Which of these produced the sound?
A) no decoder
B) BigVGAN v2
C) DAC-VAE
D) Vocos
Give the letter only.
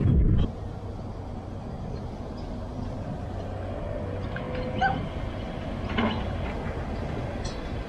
A